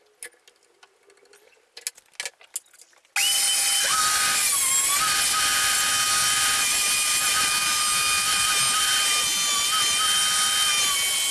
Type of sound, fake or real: real